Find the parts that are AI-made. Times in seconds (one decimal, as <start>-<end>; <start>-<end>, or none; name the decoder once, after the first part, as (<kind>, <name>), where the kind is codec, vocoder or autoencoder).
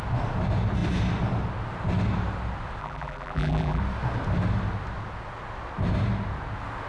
2.8-3.8 (vocoder, BigVGAN v2)